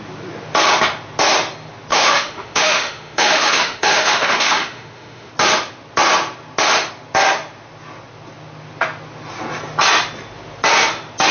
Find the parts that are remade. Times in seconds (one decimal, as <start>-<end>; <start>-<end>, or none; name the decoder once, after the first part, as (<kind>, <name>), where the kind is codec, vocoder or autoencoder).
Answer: 1.9-5.3 (autoencoder, DAC-VAE)